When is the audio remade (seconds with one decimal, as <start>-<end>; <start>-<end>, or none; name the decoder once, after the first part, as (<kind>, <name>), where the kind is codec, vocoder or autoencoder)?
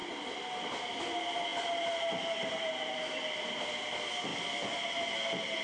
none